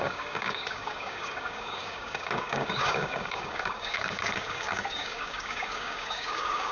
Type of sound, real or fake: fake